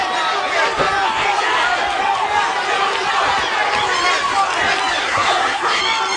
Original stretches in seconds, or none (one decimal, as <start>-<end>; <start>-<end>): 0.0-5.0; 5.8-6.2